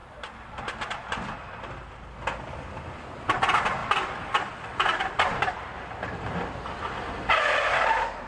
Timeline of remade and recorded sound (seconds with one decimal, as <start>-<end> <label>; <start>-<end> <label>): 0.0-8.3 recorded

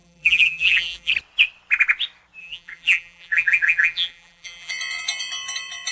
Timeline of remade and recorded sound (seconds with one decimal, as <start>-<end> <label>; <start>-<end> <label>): 0.0-1.1 remade; 1.1-2.4 recorded; 2.4-4.7 remade; 4.7-5.9 recorded

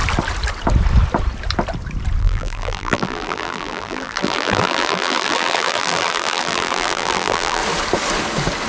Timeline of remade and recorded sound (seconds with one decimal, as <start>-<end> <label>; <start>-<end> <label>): 0.0-2.2 recorded; 2.2-7.6 remade; 7.6-8.7 recorded